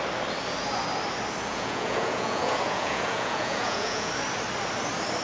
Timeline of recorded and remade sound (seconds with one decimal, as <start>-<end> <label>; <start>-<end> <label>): 0.0-1.5 recorded; 1.5-4.1 remade; 4.1-5.2 recorded